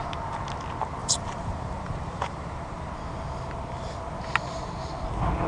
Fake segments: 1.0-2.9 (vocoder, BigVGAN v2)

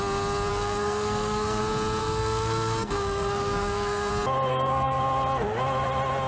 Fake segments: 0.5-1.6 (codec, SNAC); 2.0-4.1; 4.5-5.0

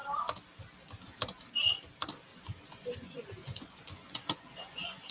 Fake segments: 2.3-5.1 (vocoder, Vocos)

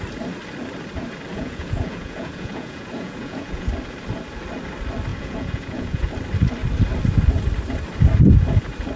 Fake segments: 1.3-3.7 (vocoder, Vocos); 5.1-6.1

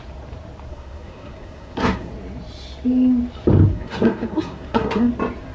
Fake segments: 0.7-2.1 (codec, SNAC); 3.7-5.1

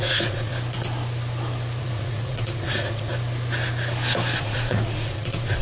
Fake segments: 0.0-0.5 (vocoder, Vocos); 1.8-3.1; 4.4-5.6